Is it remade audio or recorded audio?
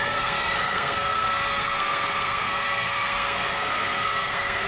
remade